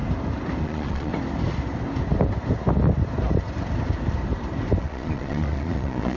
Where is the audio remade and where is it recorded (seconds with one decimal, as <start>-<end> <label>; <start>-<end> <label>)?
0.0-0.6 recorded; 0.6-1.1 remade; 1.1-4.8 recorded; 4.8-6.2 remade